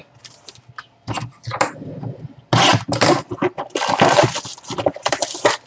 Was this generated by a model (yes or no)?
no